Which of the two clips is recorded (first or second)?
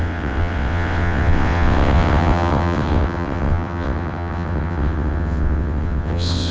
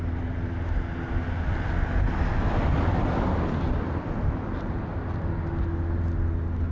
second